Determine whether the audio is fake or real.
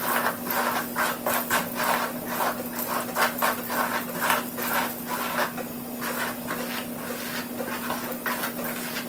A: real